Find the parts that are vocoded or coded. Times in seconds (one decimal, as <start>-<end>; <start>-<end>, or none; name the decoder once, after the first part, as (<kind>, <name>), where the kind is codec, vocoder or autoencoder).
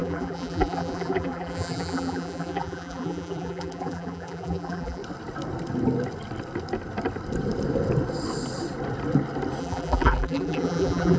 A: 0.0-5.0 (vocoder, BigVGAN v2); 9.6-11.2